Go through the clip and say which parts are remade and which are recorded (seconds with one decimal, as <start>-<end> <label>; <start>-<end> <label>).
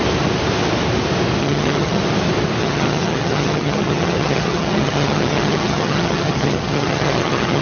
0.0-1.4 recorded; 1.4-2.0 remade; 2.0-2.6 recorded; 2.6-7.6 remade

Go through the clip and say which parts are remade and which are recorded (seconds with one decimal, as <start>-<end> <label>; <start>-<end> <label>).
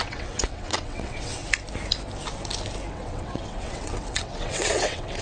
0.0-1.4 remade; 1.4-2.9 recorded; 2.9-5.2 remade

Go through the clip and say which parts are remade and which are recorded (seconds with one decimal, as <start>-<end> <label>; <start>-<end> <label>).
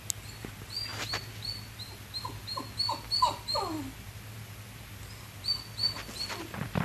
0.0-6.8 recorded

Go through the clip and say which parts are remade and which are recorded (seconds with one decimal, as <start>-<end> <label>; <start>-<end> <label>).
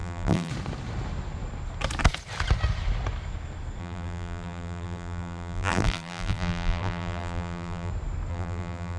0.0-0.5 remade; 0.5-3.8 recorded; 3.8-7.9 remade; 7.9-8.3 recorded; 8.3-9.0 remade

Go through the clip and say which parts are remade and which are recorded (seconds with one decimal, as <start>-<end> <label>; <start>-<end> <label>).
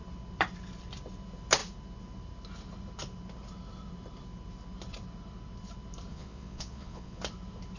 0.0-6.1 recorded; 6.1-7.2 remade; 7.2-7.8 recorded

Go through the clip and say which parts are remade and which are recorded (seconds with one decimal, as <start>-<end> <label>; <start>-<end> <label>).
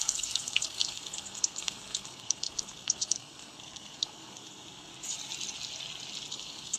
0.0-4.9 remade; 4.9-6.3 recorded; 6.3-6.8 remade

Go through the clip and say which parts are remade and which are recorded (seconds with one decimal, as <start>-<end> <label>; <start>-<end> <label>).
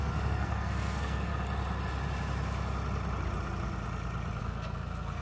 0.0-1.3 remade; 1.3-4.4 recorded; 4.4-5.2 remade